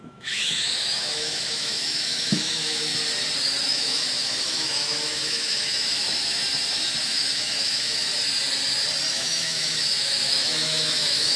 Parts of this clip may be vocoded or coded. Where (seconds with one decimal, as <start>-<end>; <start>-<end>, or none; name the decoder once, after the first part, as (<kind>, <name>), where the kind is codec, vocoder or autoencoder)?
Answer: 0.0-2.9 (autoencoder, DAC-VAE); 3.6-6.4; 7.0-8.1; 9.1-11.4